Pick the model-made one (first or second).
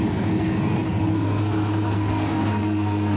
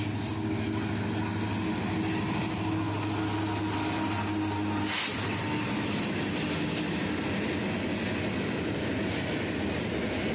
first